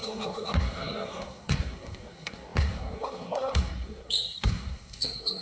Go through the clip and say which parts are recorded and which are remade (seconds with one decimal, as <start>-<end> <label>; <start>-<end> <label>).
0.0-5.4 remade